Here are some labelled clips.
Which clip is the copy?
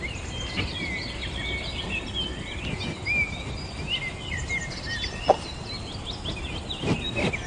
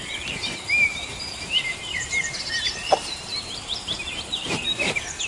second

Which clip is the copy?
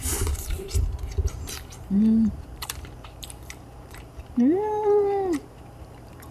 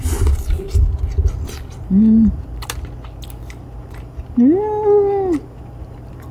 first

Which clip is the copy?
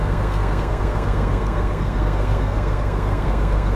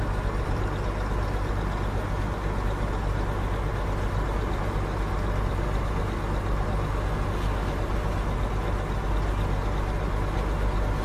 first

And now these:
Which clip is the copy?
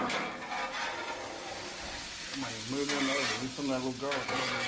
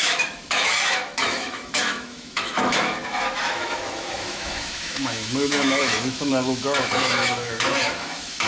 second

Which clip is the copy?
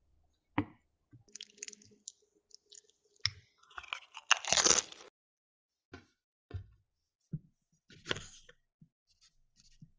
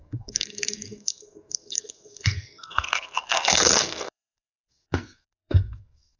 second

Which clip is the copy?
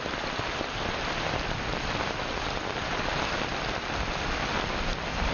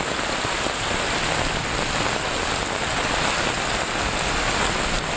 first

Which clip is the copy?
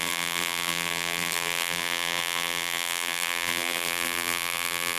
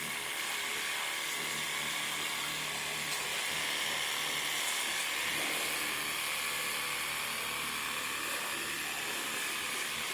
first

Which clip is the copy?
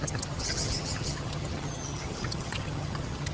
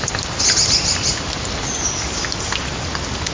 first